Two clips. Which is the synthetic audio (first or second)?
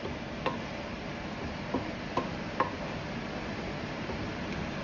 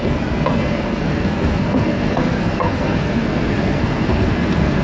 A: second